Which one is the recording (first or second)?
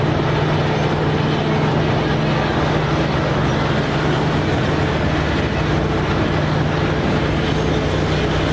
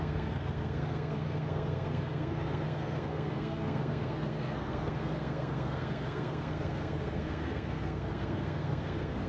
first